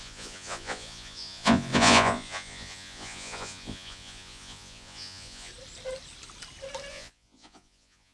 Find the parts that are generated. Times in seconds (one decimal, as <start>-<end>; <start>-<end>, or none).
0.0-5.5; 6.9-8.1